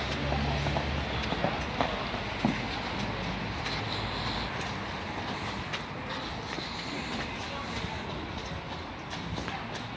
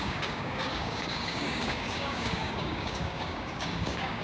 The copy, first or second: second